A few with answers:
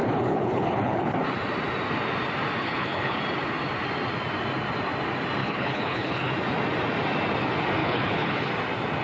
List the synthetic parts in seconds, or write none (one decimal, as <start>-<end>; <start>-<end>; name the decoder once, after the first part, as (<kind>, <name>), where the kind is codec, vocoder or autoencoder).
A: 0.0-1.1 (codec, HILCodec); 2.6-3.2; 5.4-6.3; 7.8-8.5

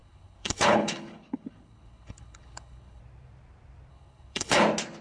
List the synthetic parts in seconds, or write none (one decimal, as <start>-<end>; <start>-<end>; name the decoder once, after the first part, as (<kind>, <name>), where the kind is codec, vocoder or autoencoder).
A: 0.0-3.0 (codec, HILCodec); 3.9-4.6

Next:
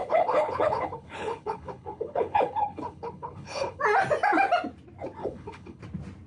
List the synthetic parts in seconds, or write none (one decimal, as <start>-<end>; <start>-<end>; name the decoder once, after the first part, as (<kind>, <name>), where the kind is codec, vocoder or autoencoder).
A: 0.0-3.8 (codec, HILCodec); 5.2-5.8

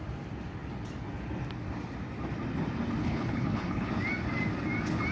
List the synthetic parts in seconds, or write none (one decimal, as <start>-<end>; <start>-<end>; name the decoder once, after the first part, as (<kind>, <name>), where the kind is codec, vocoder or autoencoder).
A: 3.0-3.9 (codec, HILCodec)